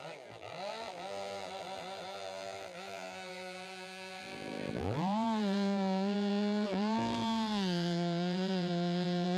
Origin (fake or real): fake